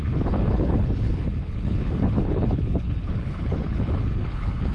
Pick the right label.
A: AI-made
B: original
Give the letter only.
A